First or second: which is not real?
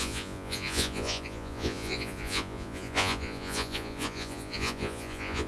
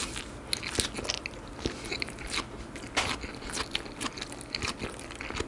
first